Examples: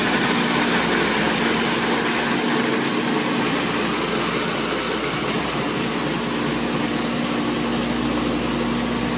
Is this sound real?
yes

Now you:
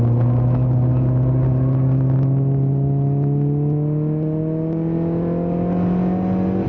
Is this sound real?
yes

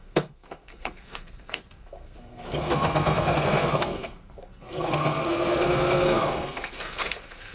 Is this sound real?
no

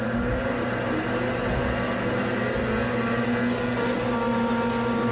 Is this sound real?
yes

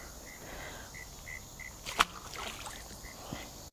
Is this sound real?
yes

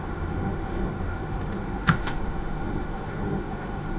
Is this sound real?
no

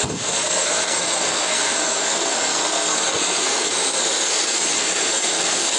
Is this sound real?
no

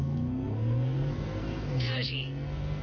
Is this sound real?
no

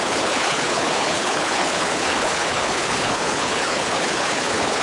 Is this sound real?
no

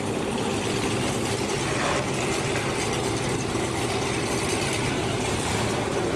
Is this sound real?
yes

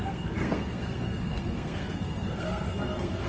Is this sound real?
no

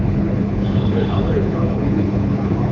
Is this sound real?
no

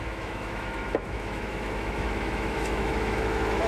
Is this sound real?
no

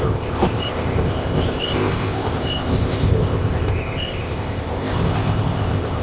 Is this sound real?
no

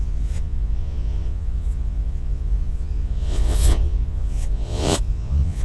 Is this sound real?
no